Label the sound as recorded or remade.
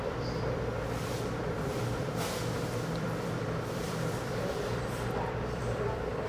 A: remade